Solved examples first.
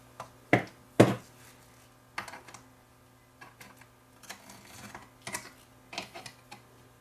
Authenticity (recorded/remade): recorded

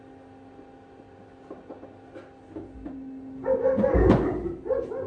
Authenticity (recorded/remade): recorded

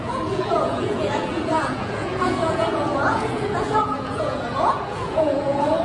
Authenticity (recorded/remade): remade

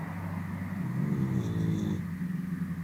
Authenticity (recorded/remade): recorded